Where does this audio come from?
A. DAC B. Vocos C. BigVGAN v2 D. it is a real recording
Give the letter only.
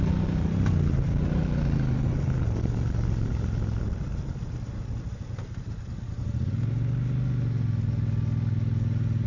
D